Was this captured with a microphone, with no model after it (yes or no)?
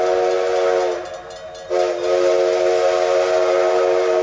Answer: yes